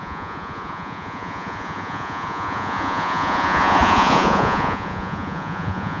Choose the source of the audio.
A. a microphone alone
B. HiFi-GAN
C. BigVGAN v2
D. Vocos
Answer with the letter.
D